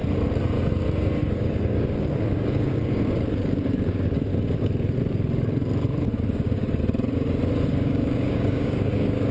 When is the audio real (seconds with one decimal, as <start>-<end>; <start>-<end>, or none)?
0.0-1.2; 4.3-6.2; 6.8-7.7